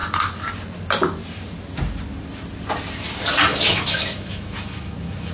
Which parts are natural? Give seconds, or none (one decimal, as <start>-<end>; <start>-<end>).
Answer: 0.0-3.7